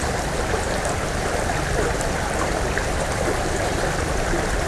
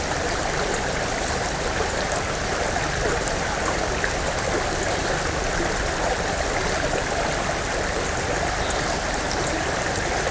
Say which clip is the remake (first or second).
first